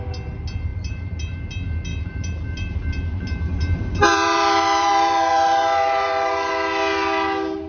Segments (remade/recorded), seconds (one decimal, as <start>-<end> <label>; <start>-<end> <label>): 0.0-0.7 recorded; 0.7-1.5 remade; 1.5-1.9 recorded; 1.9-6.5 remade; 6.5-7.7 recorded